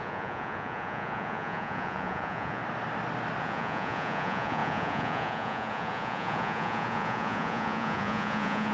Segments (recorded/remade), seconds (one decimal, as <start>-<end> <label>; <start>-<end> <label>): 0.0-2.6 remade; 2.6-3.4 recorded; 3.4-8.7 remade